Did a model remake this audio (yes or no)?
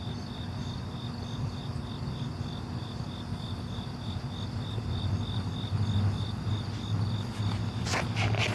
no